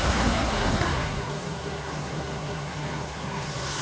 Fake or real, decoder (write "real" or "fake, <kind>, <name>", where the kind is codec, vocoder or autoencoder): fake, codec, SNAC